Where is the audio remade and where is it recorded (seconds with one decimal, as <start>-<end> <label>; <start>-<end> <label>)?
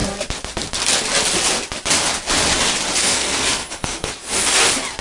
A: 0.0-3.0 recorded; 3.0-4.1 remade; 4.1-5.0 recorded